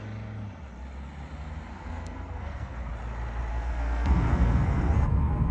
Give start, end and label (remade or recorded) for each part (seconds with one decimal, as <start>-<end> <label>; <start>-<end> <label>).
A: 0.0-1.7 recorded; 1.7-2.9 remade; 2.9-3.5 recorded; 3.5-5.5 remade